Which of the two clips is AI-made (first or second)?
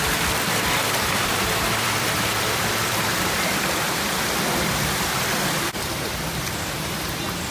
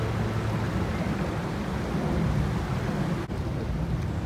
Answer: first